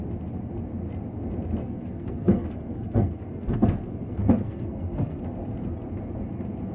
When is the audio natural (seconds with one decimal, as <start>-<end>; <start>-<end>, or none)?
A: 0.0-1.6; 5.2-6.7